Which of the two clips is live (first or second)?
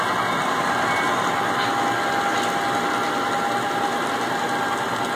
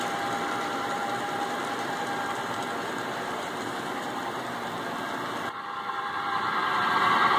first